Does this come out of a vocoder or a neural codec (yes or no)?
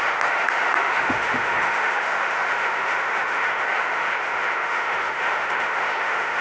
yes